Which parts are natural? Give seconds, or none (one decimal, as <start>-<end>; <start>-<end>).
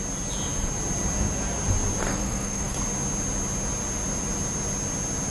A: 0.0-2.0; 2.8-5.3